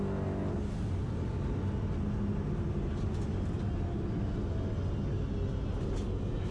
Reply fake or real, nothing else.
real